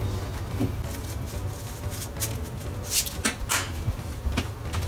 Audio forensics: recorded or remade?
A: recorded